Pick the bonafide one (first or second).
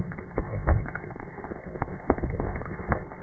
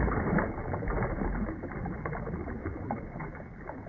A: second